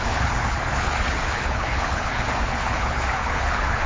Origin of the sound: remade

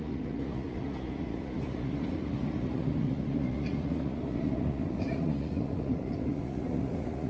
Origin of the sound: remade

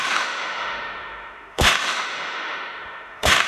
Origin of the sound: remade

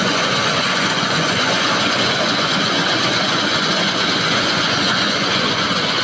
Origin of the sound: remade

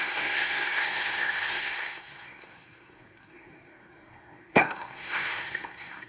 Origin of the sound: remade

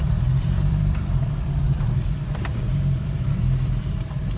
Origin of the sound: remade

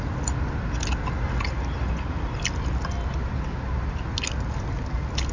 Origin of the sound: recorded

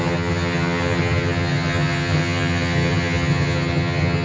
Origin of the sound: remade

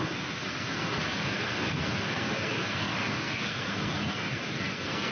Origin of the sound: remade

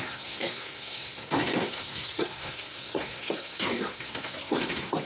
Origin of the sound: remade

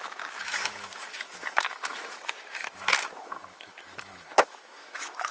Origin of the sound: remade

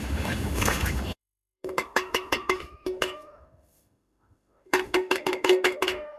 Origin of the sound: remade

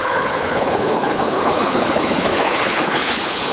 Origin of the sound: remade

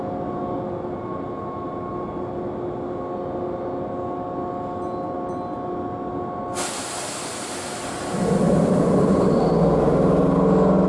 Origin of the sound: recorded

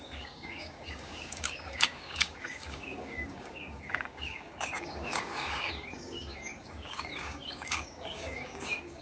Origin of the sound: remade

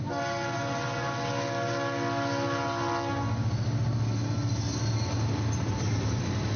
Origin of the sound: recorded